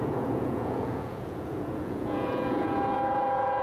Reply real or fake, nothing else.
fake